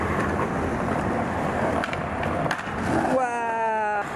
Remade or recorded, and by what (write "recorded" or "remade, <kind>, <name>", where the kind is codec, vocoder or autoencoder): recorded